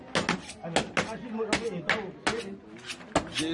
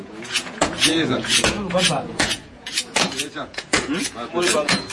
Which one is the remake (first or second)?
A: second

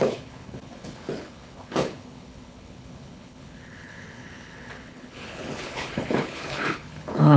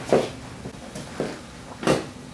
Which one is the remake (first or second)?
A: first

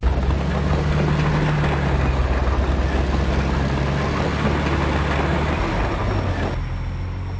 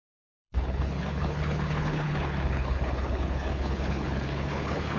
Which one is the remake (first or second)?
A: second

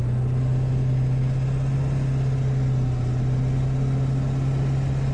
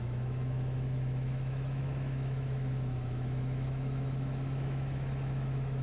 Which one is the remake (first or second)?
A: second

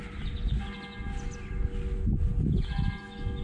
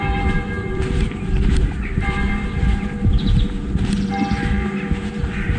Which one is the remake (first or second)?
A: second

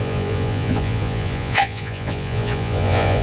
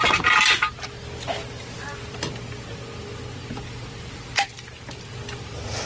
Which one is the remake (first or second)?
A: first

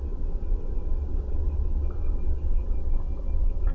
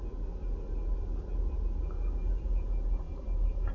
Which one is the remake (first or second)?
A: first